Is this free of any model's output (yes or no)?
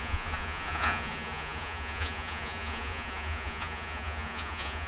no